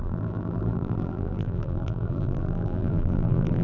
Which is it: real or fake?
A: fake